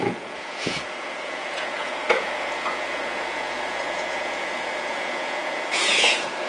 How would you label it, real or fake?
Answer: fake